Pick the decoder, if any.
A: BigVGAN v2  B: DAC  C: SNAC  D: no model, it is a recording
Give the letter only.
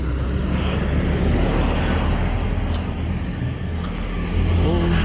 D